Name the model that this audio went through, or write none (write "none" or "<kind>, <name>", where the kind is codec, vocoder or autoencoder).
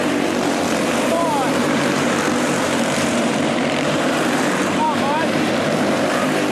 vocoder, BigVGAN v2